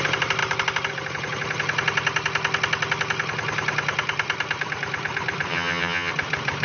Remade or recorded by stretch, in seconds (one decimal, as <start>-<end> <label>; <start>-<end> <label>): 0.0-5.5 recorded; 5.5-6.1 remade; 6.1-6.6 recorded